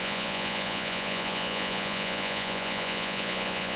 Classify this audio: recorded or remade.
remade